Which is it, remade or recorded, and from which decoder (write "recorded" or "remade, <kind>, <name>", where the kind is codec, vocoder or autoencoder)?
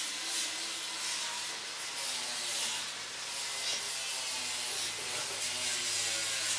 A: recorded